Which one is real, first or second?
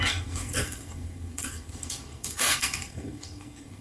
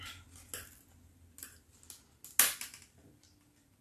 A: second